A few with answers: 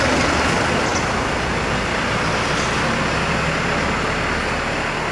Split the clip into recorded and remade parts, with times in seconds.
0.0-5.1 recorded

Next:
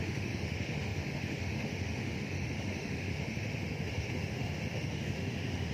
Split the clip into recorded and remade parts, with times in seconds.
0.0-5.7 remade

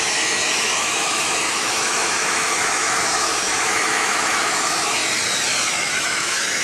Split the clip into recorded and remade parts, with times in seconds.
0.0-5.0 remade; 5.0-5.7 recorded; 5.7-6.6 remade

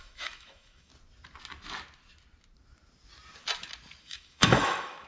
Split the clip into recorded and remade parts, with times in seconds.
0.0-0.9 remade; 0.9-4.0 recorded; 4.0-5.1 remade

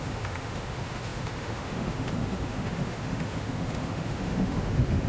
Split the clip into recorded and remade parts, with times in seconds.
0.0-5.1 remade

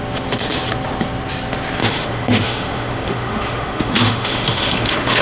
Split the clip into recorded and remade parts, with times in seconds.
0.0-1.8 recorded; 1.8-5.2 remade